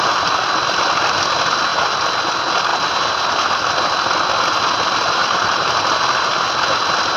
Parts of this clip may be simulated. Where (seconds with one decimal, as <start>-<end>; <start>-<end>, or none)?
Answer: 5.2-5.8